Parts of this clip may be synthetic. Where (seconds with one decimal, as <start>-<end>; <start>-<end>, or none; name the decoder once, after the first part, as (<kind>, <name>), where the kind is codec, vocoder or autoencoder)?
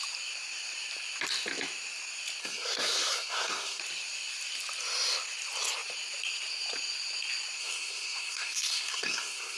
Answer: 2.4-3.8 (codec, SNAC); 7.6-9.6